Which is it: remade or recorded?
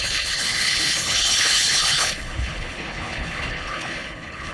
remade